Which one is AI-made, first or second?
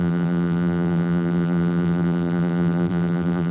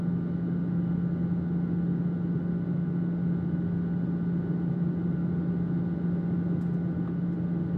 first